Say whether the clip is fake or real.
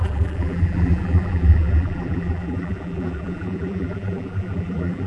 fake